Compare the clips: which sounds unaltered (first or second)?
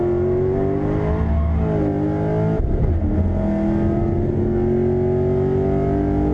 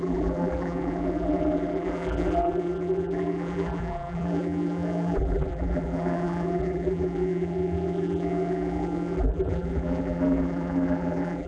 first